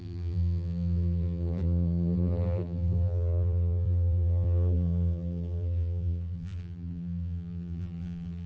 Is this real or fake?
fake